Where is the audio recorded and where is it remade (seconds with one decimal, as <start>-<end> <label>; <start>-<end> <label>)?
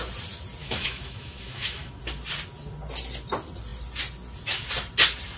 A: 0.0-0.6 recorded; 0.6-2.0 remade; 2.0-5.4 recorded